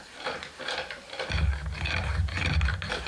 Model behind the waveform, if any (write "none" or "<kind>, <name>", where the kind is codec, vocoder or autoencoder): none